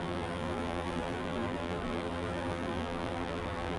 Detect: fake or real fake